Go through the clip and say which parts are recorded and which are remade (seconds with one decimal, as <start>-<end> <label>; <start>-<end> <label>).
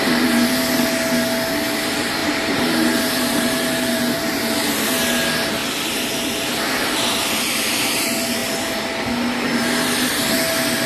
0.0-2.2 recorded; 2.2-4.4 remade; 4.4-10.9 recorded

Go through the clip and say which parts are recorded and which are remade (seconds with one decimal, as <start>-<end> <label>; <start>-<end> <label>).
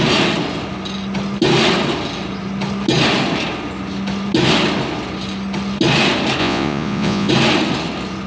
0.0-6.4 recorded; 6.4-7.3 remade; 7.3-8.3 recorded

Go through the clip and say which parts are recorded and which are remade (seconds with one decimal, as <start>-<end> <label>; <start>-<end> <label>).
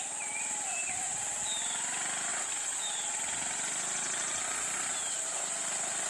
0.0-6.1 recorded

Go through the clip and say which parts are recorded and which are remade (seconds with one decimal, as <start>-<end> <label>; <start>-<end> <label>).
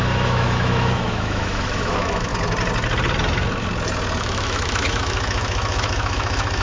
0.0-2.3 remade; 2.3-4.2 recorded; 4.2-6.6 remade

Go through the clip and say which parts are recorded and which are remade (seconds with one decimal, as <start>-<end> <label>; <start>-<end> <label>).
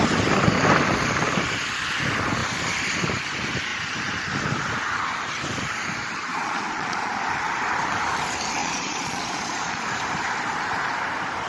0.0-6.3 recorded; 6.3-7.1 remade; 7.1-8.6 recorded; 8.6-9.8 remade; 9.8-11.5 recorded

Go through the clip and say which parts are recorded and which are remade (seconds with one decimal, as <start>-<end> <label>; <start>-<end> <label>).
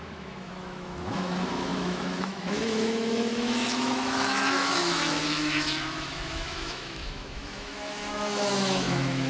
0.0-9.3 remade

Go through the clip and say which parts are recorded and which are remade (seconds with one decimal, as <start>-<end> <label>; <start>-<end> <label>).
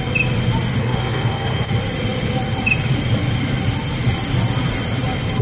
0.0-0.8 recorded; 0.8-1.7 remade; 1.7-5.4 recorded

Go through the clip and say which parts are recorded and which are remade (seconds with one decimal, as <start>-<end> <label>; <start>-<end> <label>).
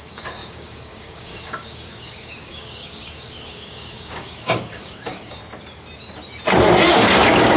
0.0-5.4 remade; 5.4-6.9 recorded; 6.9-7.6 remade